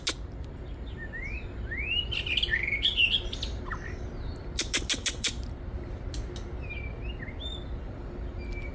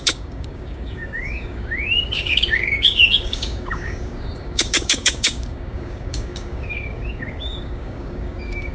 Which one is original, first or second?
first